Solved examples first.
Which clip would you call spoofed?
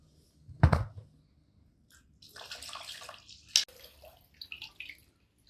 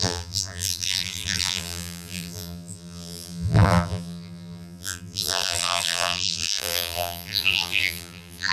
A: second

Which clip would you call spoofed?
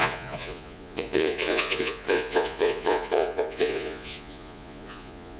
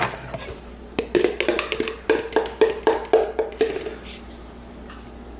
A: first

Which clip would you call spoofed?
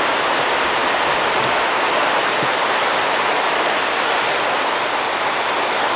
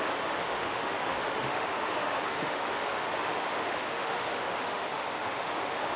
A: second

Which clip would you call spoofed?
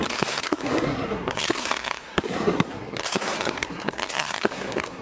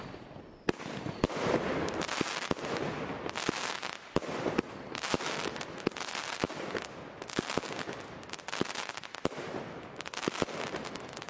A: first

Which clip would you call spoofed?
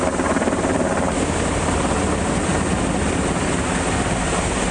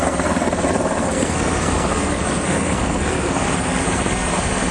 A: second